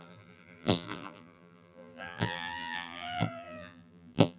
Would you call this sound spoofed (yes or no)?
yes